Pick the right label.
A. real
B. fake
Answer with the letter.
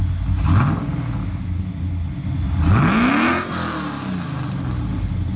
A